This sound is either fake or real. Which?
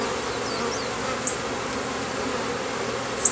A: real